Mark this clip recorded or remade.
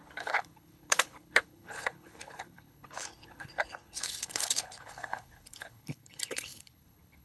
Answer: remade